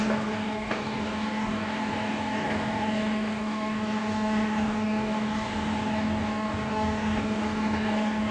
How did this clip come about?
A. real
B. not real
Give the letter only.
B